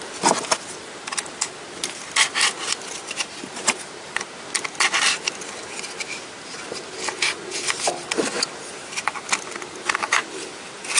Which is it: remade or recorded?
recorded